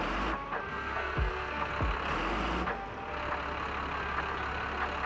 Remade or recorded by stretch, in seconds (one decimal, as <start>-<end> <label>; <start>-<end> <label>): 0.0-0.7 recorded; 0.7-1.7 remade; 1.7-5.1 recorded